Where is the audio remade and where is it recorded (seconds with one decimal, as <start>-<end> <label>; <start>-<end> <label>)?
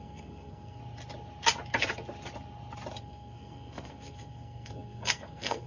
0.0-0.8 remade; 0.8-3.0 recorded; 3.0-5.7 remade